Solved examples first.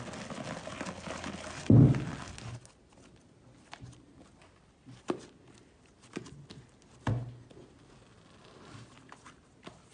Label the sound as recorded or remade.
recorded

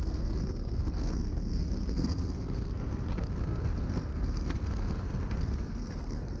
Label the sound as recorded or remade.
remade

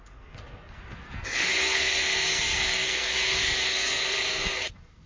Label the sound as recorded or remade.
remade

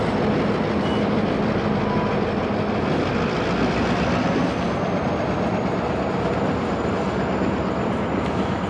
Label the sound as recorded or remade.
recorded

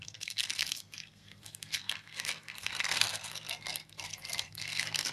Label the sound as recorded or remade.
remade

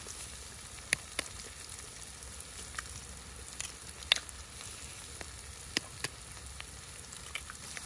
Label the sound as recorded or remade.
recorded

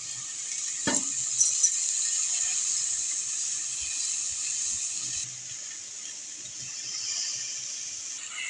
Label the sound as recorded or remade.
recorded